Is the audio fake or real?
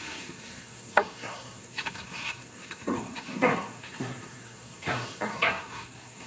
fake